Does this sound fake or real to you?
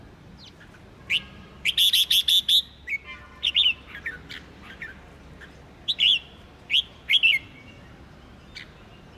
real